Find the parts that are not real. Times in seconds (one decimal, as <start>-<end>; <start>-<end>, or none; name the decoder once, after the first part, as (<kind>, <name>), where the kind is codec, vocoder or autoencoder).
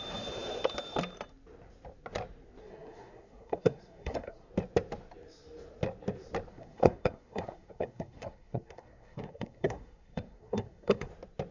2.6-4.5 (codec, SNAC); 6.5-11.1